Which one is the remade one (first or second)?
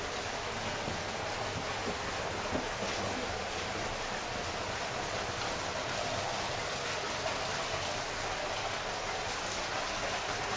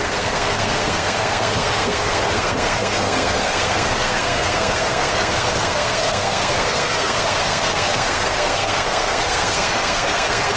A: second